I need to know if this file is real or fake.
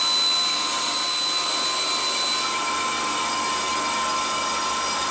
real